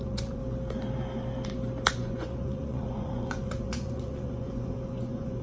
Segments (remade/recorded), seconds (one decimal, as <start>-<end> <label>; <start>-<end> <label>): 0.0-0.4 remade; 0.4-1.9 recorded; 1.9-5.4 remade